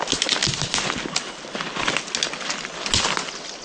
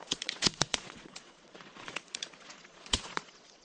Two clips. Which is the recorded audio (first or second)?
first